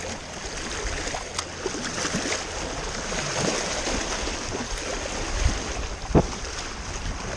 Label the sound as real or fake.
real